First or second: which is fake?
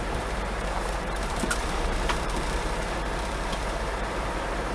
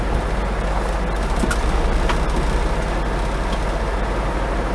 first